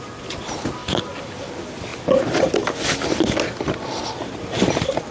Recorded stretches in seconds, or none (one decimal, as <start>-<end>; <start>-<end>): 0.0-0.8; 1.4-5.1